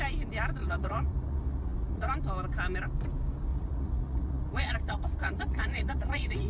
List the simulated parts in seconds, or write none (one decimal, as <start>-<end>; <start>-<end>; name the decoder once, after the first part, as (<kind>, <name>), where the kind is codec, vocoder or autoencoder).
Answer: 0.6-2.1 (vocoder, Vocos); 3.5-6.5